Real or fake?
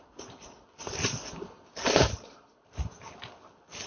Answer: real